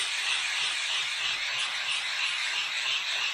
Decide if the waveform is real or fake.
real